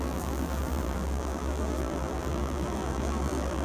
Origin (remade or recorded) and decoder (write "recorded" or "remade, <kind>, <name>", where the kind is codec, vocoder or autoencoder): remade, vocoder, BigVGAN v2